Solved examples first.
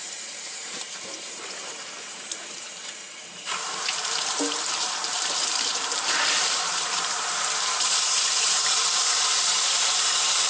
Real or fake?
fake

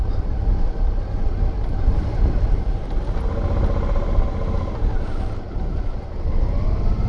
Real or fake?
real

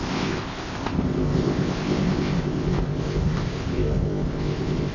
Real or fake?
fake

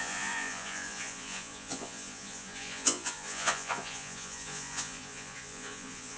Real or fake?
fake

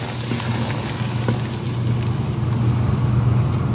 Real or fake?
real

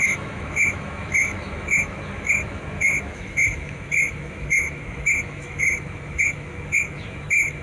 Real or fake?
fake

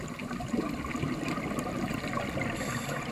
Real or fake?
real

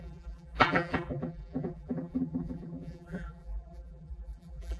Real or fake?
fake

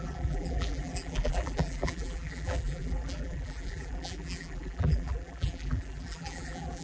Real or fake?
fake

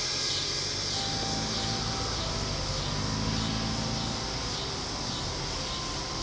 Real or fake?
real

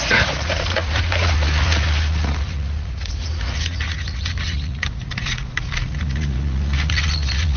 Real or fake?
fake